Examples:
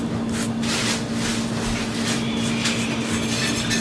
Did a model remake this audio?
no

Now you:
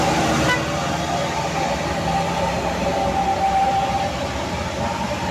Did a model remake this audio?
no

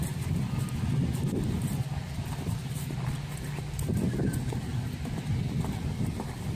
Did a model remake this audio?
no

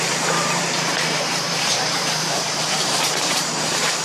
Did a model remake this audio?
yes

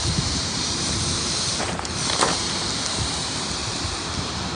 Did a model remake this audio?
yes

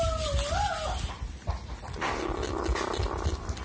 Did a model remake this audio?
no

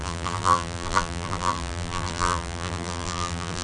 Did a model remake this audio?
yes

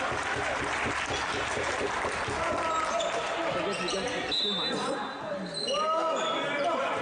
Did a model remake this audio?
no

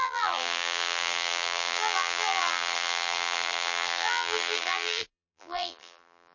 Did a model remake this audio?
yes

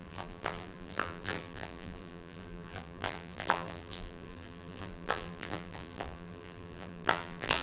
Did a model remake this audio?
yes